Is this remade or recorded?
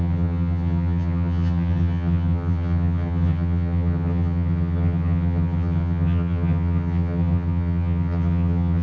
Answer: remade